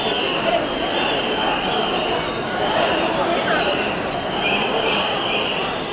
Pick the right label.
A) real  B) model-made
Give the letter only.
A